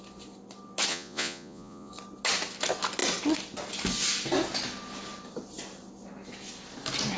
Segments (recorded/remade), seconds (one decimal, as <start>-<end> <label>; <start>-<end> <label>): 0.0-0.9 recorded; 0.9-1.9 remade; 1.9-7.2 recorded